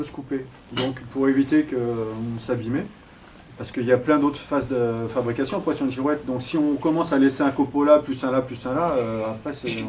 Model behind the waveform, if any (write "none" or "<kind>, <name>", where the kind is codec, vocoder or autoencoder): none